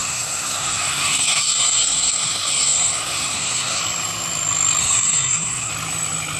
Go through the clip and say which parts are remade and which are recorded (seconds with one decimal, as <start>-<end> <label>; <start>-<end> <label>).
0.0-3.8 remade; 3.8-4.8 recorded; 4.8-5.7 remade; 5.7-6.4 recorded